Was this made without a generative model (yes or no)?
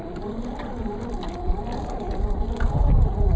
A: yes